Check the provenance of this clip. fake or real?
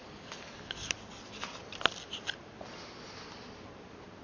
real